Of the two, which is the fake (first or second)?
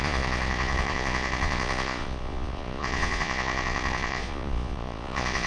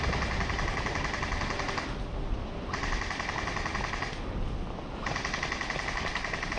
first